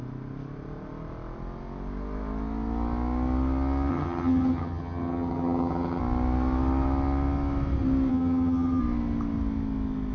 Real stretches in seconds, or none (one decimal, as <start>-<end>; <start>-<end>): 0.0-3.9; 6.0-8.1; 8.8-10.1